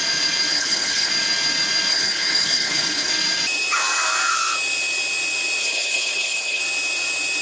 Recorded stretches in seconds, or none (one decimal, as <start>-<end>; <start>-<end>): 0.0-0.5; 1.1-1.9; 3.1-5.6; 6.6-7.4